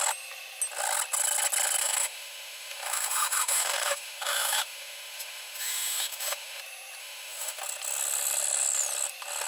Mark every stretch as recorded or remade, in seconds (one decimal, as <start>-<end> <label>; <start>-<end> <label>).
0.0-1.8 recorded; 1.8-6.6 remade; 6.6-7.0 recorded; 7.0-7.6 remade; 7.6-9.5 recorded